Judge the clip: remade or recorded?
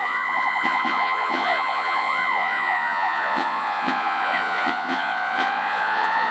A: remade